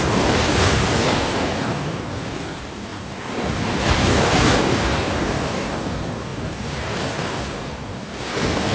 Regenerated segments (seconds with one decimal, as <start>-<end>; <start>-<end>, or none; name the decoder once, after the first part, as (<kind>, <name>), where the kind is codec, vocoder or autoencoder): 0.0-8.7 (codec, DAC)